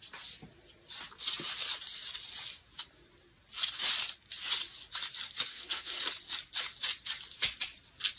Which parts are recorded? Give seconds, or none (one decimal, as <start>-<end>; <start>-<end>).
0.0-5.5; 6.0-8.2